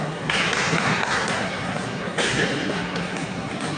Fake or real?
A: fake